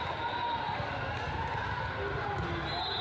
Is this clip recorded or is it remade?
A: recorded